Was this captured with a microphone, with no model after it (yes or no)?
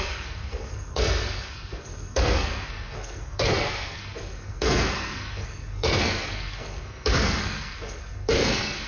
no